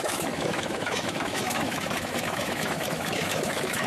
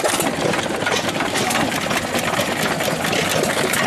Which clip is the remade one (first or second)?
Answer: first